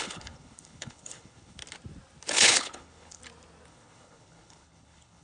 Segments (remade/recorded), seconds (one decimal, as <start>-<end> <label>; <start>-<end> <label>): 0.0-1.6 remade; 1.6-2.3 recorded; 2.3-3.2 remade; 3.2-3.7 recorded; 3.7-5.2 remade